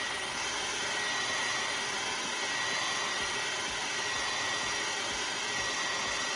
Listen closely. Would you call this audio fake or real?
real